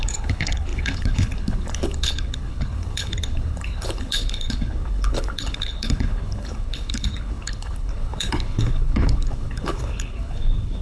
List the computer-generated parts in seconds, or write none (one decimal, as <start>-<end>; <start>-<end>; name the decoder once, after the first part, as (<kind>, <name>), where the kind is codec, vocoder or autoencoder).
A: 0.0-10.8 (codec, HILCodec)